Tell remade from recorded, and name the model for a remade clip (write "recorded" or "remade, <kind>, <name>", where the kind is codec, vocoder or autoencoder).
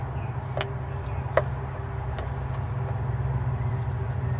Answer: recorded